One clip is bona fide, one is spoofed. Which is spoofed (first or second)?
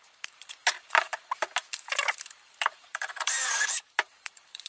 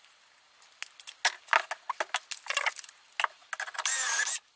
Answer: first